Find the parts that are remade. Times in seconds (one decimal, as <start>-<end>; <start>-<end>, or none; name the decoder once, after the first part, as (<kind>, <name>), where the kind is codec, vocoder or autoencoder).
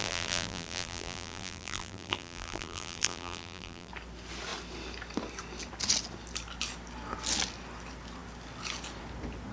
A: 0.0-3.9 (vocoder, BigVGAN v2)